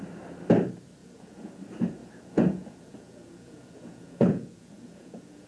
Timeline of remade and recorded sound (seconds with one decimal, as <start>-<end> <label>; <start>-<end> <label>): 0.0-1.0 recorded; 1.0-1.6 remade; 1.6-2.0 recorded; 2.0-5.5 remade